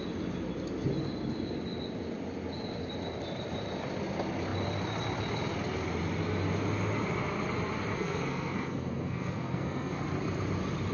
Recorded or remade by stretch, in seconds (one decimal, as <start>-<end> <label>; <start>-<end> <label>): 0.0-7.9 recorded; 7.9-10.0 remade; 10.0-10.9 recorded